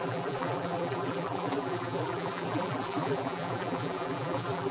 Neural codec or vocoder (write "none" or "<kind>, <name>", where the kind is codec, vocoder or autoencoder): vocoder, BigVGAN v2